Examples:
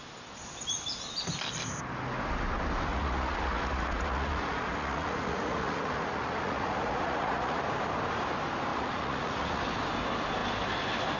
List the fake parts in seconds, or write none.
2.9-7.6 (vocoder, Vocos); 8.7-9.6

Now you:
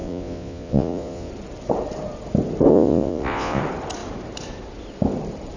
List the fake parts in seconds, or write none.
0.0-1.3 (vocoder, Vocos); 2.7-3.6